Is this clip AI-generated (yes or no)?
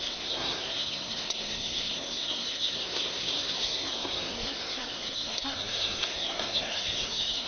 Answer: yes